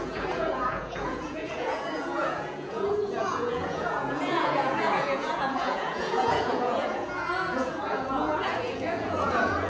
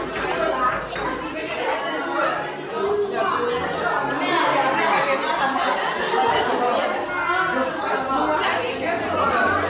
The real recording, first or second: second